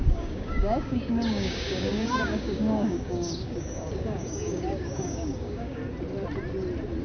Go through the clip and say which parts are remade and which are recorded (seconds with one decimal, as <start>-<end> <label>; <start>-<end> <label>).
0.0-5.8 remade; 5.8-7.0 recorded